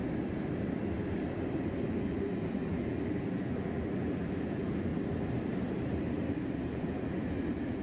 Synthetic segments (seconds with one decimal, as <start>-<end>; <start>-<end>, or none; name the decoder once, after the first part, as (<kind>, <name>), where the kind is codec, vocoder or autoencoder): 1.9-4.9 (vocoder, BigVGAN v2); 6.7-7.8